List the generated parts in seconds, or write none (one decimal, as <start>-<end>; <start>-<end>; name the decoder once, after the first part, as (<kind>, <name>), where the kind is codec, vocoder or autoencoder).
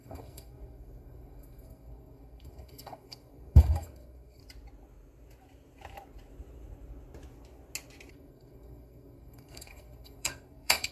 0.0-4.4 (codec, SNAC); 8.1-10.9